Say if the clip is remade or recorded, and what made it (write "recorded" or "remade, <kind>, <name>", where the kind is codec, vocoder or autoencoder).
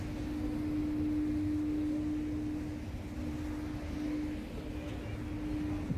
recorded